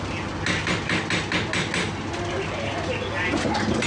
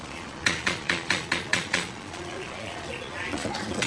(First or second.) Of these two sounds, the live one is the first